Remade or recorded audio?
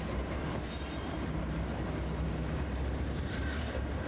remade